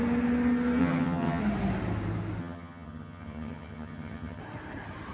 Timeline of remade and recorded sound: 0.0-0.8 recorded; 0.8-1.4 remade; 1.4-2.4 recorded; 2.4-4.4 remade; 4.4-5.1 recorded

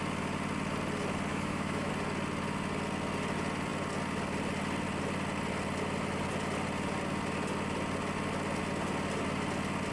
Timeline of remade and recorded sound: 0.0-1.3 recorded; 1.3-1.9 remade; 1.9-9.9 recorded

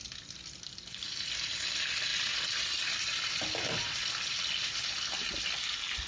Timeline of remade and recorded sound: 0.0-2.1 recorded; 2.1-3.4 remade; 3.4-4.6 recorded; 4.6-5.2 remade; 5.2-6.1 recorded

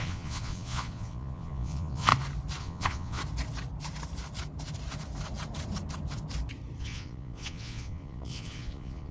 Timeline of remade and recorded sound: 0.0-2.1 remade; 2.1-2.6 recorded; 2.6-3.2 remade; 3.2-6.8 recorded; 6.8-9.1 remade

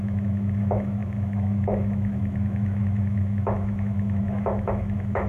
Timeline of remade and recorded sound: 0.0-5.3 remade